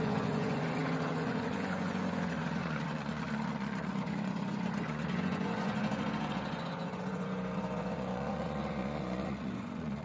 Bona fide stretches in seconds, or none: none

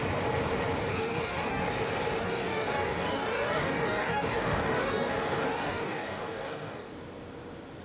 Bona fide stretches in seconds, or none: 0.0-0.9; 1.7-2.2; 6.9-7.8

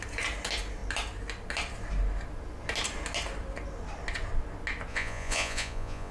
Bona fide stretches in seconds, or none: 0.0-4.9

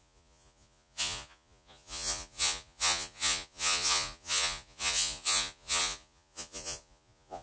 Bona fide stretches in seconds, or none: none